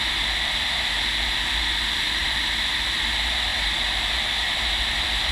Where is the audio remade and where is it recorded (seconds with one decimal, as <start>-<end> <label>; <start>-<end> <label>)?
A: 0.0-5.3 recorded